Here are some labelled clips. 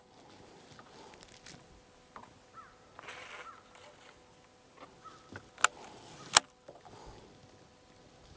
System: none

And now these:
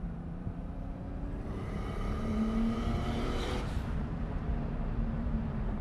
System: vocoder, BigVGAN v2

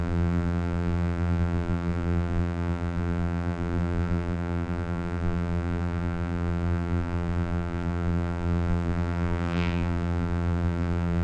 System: vocoder, BigVGAN v2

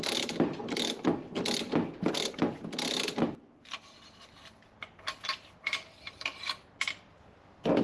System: none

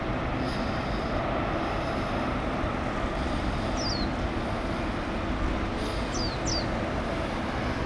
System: none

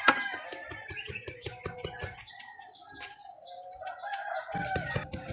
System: none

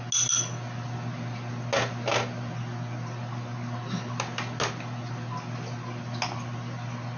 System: none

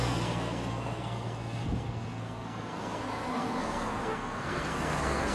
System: codec, SNAC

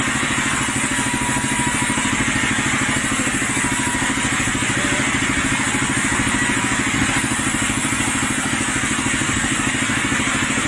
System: none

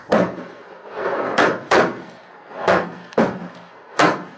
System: codec, SNAC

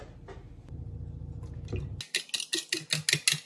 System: none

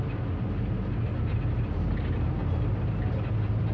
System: none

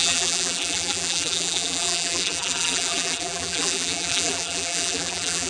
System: vocoder, BigVGAN v2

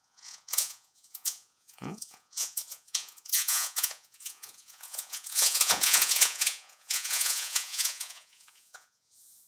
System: vocoder, Vocos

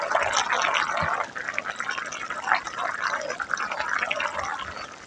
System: none